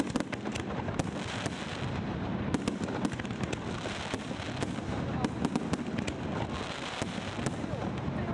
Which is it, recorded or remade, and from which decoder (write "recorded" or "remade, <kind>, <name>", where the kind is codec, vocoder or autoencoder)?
recorded